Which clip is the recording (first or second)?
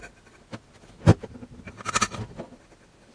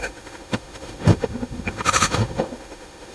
first